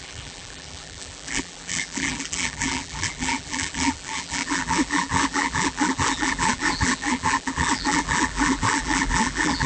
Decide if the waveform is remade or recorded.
remade